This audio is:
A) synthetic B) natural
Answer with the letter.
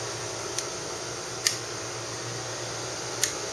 B